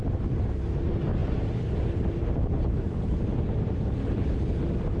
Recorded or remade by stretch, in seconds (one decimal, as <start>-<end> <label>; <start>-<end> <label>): 0.0-1.2 recorded; 1.2-4.2 remade; 4.2-5.0 recorded